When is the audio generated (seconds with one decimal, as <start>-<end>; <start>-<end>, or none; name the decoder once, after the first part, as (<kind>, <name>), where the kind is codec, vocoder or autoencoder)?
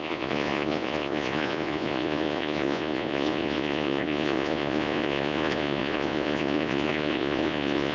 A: 0.0-7.9 (vocoder, Vocos)